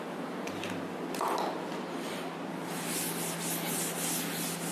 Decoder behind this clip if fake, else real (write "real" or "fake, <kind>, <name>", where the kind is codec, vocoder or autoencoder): real